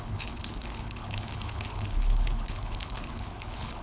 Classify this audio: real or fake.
fake